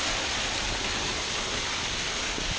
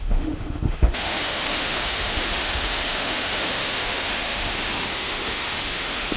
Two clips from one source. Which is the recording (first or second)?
first